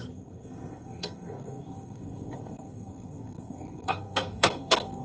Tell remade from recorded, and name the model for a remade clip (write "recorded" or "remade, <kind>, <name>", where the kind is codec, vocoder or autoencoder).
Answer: remade, codec, SNAC